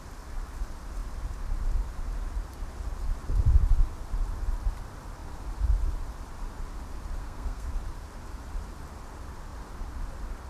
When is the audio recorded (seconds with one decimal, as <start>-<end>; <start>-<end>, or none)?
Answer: 0.0-7.2; 7.7-10.5